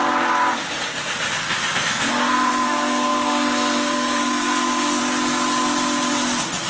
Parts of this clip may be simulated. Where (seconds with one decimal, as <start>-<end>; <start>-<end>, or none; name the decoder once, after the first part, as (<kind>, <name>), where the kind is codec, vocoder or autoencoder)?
1.4-5.0 (codec, SNAC)